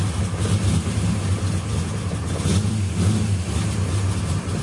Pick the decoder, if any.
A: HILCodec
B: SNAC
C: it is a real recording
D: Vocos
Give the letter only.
C